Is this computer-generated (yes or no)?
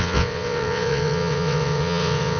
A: yes